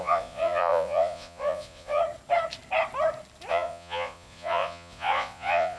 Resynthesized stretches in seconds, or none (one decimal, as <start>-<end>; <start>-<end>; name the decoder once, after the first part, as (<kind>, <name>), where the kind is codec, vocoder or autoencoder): 0.0-2.0 (vocoder, Vocos); 3.5-5.8